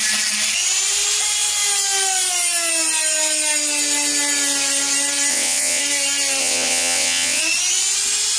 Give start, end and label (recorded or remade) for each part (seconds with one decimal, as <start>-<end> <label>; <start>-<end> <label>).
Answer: 0.0-5.3 recorded; 5.3-5.8 remade; 5.8-6.4 recorded; 6.4-7.4 remade; 7.4-8.4 recorded